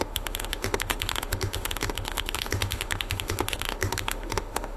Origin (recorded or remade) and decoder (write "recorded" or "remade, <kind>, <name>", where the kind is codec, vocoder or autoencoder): remade, autoencoder, DAC-VAE